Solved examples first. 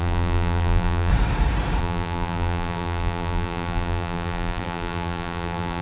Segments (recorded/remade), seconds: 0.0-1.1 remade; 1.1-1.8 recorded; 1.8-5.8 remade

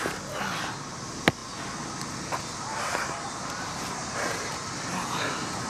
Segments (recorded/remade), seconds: 0.0-5.7 recorded

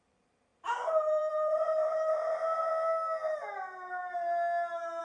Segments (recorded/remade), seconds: 0.0-2.7 remade; 2.7-3.4 recorded; 3.4-5.0 remade

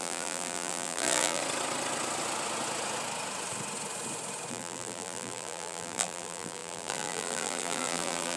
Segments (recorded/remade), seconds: 0.0-1.4 remade; 1.4-4.5 recorded; 4.5-8.4 remade

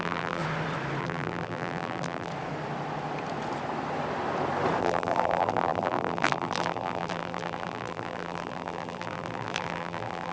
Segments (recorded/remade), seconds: 0.0-0.4 remade; 0.4-1.0 recorded; 1.0-2.3 remade; 2.3-4.8 recorded; 4.8-10.3 remade

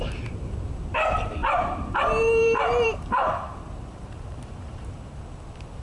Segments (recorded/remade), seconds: 0.0-1.4 recorded; 1.4-4.9 remade; 4.9-5.8 recorded

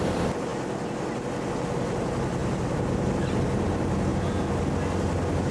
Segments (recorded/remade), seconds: 0.0-0.5 remade; 0.5-1.7 recorded; 1.7-5.5 remade